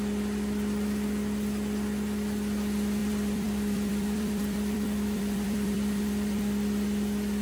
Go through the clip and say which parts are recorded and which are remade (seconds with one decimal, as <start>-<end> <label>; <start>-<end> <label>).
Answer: 0.0-3.0 recorded; 3.0-6.4 remade; 6.4-7.4 recorded

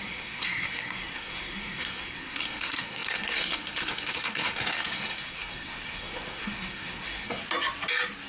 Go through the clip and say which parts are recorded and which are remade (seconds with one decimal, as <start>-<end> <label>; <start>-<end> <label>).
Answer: 0.0-7.4 remade; 7.4-8.3 recorded

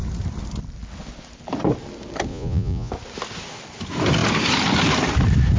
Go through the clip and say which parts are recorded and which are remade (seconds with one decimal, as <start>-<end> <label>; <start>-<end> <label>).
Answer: 0.0-2.3 recorded; 2.3-2.9 remade; 2.9-5.6 recorded

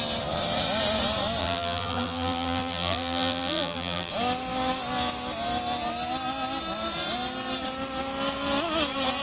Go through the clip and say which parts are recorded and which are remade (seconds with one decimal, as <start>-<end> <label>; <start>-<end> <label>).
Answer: 0.0-1.4 recorded; 1.4-4.1 remade; 4.1-9.2 recorded